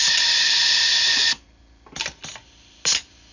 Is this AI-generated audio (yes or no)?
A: no